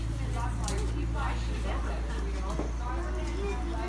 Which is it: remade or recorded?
recorded